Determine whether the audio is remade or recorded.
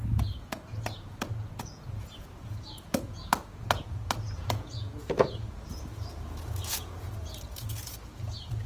remade